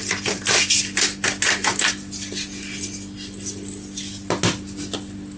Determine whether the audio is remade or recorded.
recorded